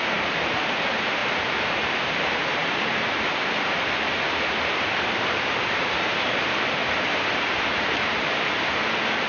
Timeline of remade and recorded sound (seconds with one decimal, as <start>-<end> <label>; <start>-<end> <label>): 0.0-6.8 remade; 6.8-7.5 recorded; 7.5-9.3 remade